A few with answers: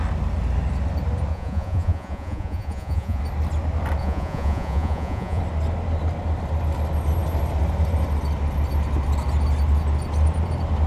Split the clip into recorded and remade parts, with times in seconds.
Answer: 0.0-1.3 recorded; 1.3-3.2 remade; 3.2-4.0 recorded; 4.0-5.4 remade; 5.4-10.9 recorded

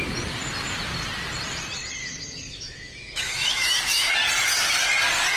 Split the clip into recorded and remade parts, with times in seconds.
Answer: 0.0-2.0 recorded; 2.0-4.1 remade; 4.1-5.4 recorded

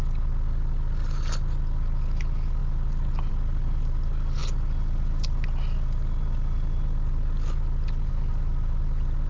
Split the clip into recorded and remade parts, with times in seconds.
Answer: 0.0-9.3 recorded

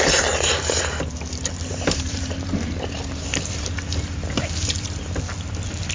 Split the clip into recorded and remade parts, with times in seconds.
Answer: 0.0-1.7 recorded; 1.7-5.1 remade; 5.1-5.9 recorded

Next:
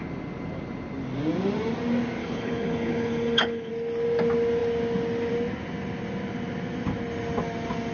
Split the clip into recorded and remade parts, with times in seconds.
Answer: 0.0-2.2 recorded; 2.2-3.7 remade; 3.7-7.9 recorded

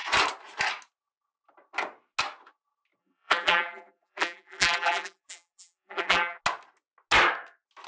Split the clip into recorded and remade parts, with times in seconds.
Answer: 0.0-3.0 recorded; 3.0-6.4 remade; 6.4-7.9 recorded